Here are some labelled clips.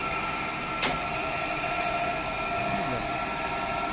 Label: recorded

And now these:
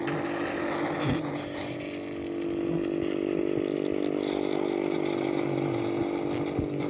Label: recorded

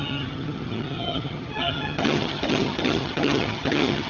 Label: remade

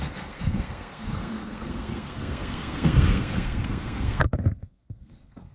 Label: remade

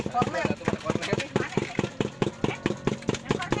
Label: recorded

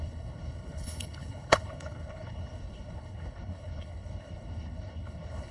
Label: remade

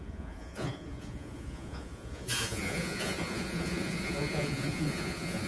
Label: remade